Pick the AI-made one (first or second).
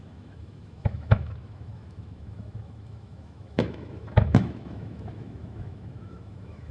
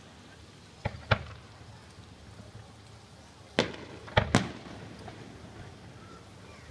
first